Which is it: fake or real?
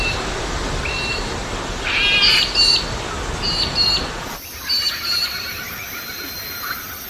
real